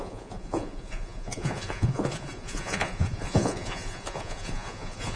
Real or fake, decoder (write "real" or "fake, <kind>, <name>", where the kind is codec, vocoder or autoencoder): fake, vocoder, Vocos